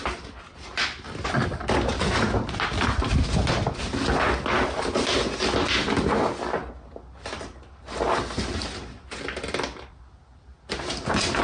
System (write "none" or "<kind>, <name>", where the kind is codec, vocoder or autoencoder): none